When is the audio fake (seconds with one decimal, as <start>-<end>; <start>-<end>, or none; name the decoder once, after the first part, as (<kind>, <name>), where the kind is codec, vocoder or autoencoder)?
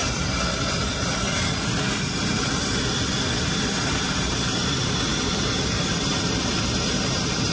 3.9-7.5 (vocoder, BigVGAN v2)